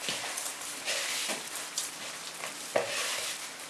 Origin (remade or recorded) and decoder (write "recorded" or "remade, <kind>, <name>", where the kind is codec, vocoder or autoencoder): recorded